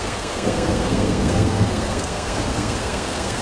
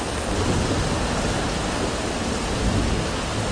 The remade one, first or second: first